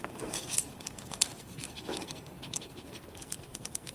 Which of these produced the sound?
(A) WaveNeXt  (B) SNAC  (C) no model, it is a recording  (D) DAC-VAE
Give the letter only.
B